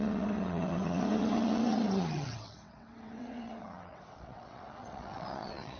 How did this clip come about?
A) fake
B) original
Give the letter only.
A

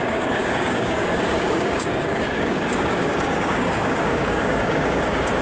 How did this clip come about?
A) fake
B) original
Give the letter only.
A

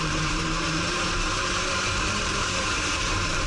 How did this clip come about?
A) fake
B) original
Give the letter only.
A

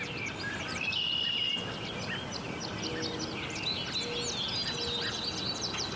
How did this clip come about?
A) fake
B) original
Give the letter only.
B